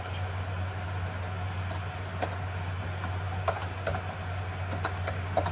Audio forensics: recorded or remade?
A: recorded